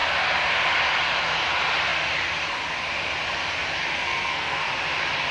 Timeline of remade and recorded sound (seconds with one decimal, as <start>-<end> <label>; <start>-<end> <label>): 0.0-3.9 recorded; 3.9-4.7 remade; 4.7-5.3 recorded